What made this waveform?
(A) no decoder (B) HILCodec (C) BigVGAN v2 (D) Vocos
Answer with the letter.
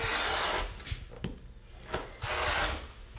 A